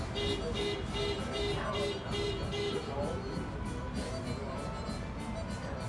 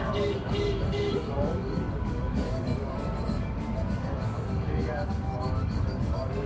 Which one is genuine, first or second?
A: first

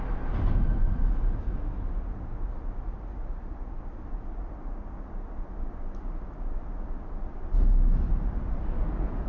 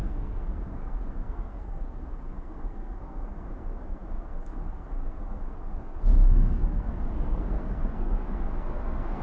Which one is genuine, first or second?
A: first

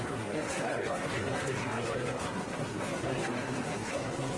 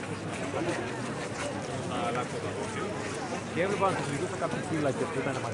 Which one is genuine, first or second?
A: second